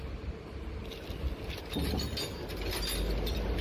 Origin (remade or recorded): recorded